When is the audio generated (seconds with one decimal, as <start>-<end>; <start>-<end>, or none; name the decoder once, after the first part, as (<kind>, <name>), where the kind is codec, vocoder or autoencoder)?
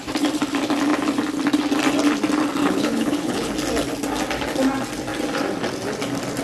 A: 2.6-3.5 (codec, HILCodec)